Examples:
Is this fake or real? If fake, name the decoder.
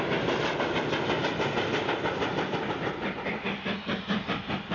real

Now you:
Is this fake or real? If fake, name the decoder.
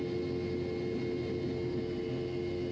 real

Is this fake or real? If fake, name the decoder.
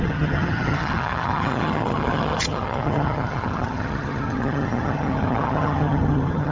fake, vocoder, HiFi-GAN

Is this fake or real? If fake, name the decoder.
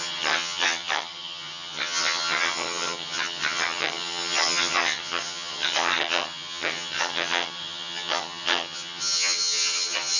fake, vocoder, HiFi-GAN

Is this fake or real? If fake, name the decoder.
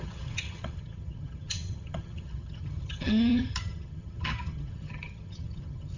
fake, vocoder, HiFi-GAN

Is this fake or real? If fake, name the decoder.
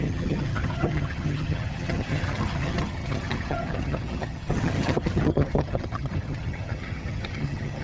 fake, vocoder, HiFi-GAN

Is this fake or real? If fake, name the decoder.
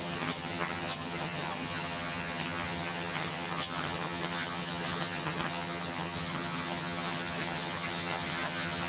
fake, vocoder, HiFi-GAN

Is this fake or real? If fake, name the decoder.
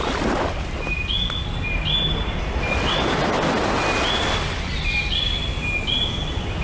real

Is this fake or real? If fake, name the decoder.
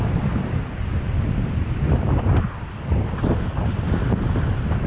real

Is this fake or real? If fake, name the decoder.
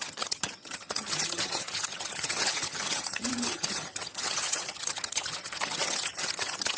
fake, vocoder, HiFi-GAN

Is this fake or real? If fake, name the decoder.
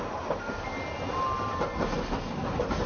real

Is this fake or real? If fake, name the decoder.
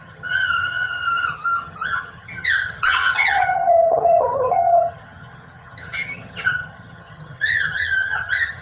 fake, vocoder, HiFi-GAN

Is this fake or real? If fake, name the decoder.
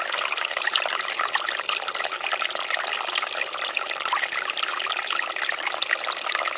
real